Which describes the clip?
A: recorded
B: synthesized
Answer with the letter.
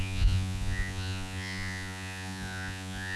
B